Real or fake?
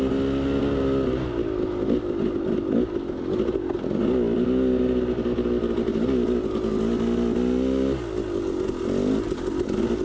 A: real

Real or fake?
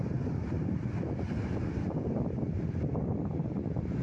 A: real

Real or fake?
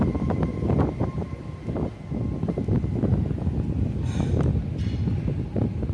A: real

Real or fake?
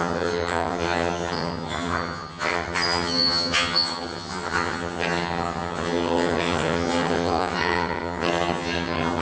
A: fake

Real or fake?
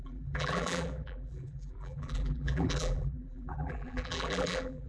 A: fake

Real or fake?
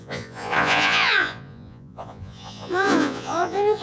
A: fake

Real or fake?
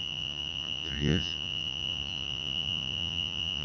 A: fake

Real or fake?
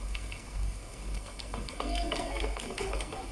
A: fake